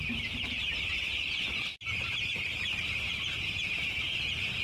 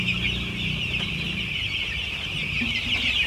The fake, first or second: first